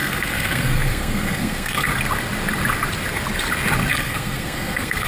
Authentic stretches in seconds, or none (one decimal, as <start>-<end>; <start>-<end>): 1.9-3.9